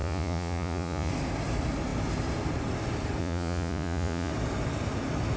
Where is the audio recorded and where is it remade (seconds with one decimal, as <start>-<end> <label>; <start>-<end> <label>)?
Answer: 0.0-1.1 remade; 1.1-3.2 recorded; 3.2-4.3 remade; 4.3-5.4 recorded